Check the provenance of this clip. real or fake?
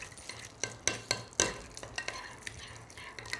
real